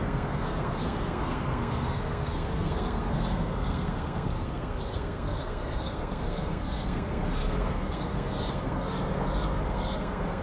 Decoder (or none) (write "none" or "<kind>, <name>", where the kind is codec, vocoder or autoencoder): codec, SNAC